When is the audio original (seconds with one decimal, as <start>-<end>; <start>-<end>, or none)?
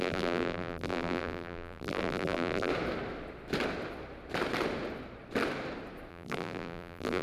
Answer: 2.7-6.1